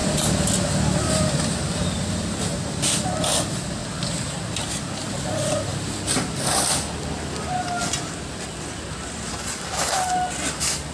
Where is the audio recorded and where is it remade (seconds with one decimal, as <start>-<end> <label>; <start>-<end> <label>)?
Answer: 0.0-10.9 recorded